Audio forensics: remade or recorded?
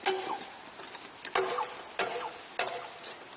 recorded